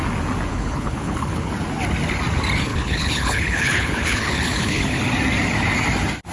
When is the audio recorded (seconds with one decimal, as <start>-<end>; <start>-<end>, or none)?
0.0-0.5; 1.5-2.7; 5.0-6.3